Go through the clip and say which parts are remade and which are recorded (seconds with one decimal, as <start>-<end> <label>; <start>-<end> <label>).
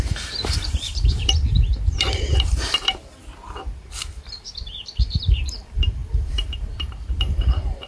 0.0-3.2 remade; 3.2-3.8 recorded; 3.8-7.9 remade